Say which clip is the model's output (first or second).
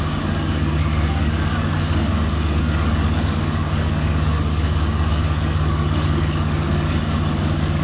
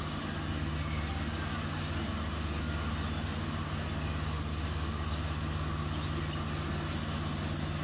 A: first